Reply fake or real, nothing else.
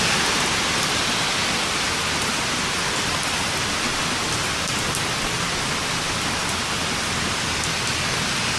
real